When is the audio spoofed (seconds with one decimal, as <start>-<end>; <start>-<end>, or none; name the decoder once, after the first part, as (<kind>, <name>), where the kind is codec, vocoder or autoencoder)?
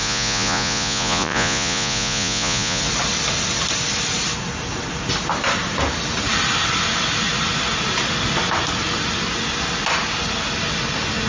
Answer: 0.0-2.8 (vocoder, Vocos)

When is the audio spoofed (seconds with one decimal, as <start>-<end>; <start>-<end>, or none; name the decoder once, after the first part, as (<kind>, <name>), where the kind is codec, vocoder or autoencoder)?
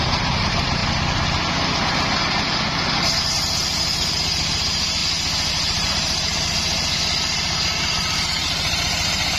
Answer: 0.0-0.8 (vocoder, BigVGAN v2); 3.8-5.0; 5.5-6.3; 7.5-9.4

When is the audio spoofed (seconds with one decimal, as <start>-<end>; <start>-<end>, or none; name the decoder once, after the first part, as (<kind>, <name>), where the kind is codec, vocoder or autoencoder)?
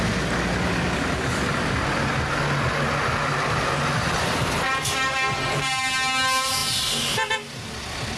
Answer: none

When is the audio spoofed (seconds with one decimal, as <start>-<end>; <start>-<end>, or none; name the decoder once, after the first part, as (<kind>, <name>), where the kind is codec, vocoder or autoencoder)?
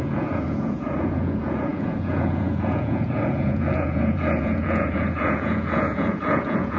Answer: 0.0-6.8 (vocoder, Vocos)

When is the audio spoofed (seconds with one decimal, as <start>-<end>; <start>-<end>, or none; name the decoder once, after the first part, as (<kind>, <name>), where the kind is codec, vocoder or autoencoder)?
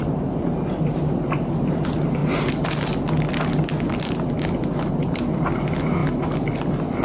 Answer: none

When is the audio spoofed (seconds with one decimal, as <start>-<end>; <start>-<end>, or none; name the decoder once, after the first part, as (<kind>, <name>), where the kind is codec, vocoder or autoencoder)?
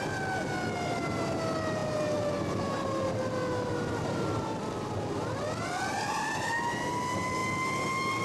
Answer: none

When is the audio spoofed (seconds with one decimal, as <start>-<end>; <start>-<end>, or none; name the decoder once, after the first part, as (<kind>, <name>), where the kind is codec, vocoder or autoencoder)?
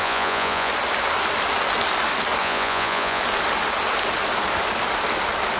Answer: 0.0-0.7 (vocoder, Vocos); 2.4-3.2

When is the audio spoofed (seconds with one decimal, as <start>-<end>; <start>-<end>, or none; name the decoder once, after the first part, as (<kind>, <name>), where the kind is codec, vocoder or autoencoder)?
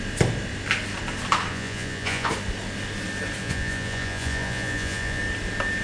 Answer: 1.5-2.3 (vocoder, Vocos); 3.4-5.2